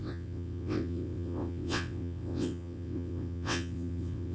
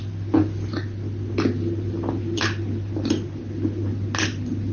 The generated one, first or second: first